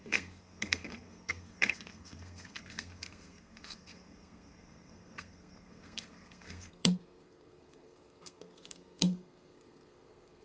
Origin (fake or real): fake